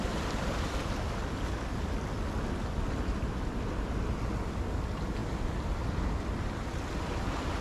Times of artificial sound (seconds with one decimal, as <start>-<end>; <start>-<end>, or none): none